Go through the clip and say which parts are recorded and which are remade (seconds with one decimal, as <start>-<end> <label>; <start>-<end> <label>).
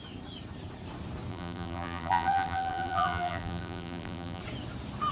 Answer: 0.0-1.3 recorded; 1.3-4.4 remade; 4.4-5.1 recorded